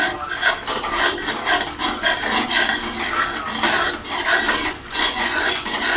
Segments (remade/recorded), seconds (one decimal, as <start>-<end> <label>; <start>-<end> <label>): 0.0-4.6 recorded; 4.6-6.0 remade